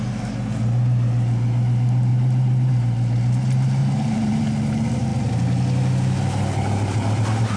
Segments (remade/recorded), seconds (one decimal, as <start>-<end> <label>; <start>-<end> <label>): 0.0-2.1 recorded; 2.1-2.7 remade; 2.7-3.8 recorded; 3.8-4.4 remade; 4.4-7.6 recorded